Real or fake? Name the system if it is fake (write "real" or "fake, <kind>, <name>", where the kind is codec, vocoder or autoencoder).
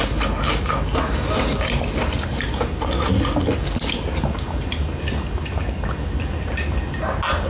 real